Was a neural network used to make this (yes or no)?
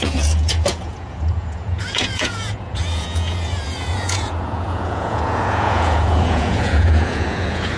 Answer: yes